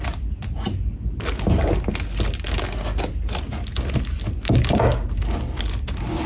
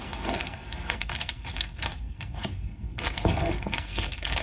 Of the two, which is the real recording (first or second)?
first